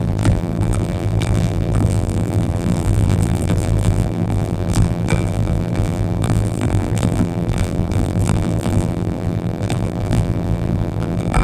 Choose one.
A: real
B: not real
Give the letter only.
B